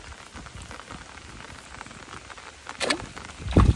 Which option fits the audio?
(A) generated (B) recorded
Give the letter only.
B